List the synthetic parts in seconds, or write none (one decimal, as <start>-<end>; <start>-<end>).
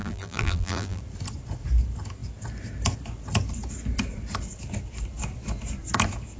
0.0-1.0